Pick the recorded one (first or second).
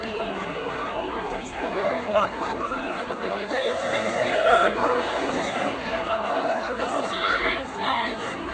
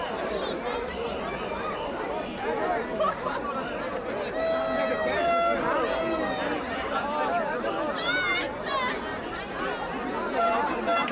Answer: second